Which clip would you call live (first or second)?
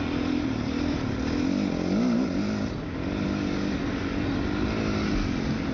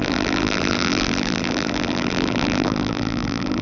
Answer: first